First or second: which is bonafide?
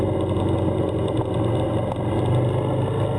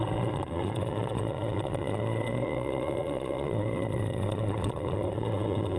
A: first